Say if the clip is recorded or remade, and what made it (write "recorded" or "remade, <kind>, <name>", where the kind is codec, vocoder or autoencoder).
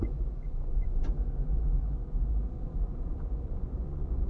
remade, vocoder, Vocos